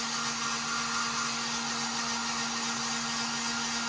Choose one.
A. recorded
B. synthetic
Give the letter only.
A